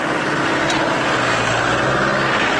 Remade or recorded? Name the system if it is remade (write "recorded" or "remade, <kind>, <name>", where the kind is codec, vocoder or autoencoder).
recorded